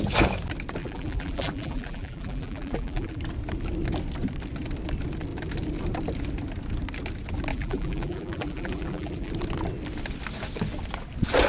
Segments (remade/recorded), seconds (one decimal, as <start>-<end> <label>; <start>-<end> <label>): 0.0-0.8 recorded; 0.8-3.2 remade; 3.2-7.5 recorded; 7.5-9.3 remade; 9.3-11.5 recorded